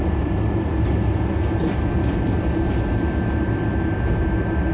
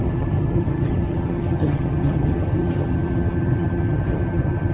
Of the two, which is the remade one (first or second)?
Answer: second